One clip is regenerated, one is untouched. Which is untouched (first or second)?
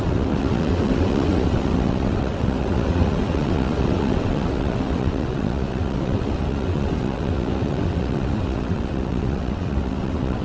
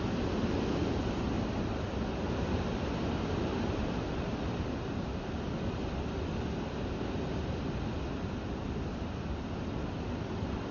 second